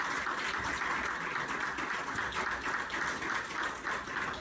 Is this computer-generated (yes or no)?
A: no